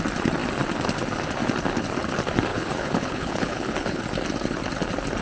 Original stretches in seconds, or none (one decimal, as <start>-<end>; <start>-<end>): 0.0-2.5; 4.0-5.2

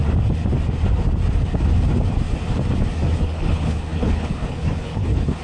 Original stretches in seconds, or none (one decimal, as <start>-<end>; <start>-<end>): 0.0-3.2

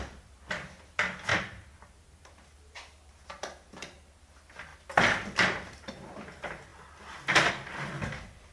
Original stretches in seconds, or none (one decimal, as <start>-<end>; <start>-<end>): 0.0-8.5

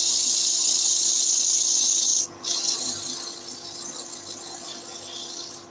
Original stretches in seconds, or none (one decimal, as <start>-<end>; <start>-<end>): 0.0-5.7

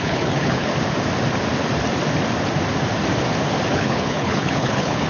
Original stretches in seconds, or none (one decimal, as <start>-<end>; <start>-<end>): 0.7-3.7

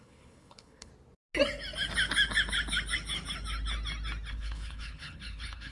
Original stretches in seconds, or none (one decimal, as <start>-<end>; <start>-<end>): 0.9-4.3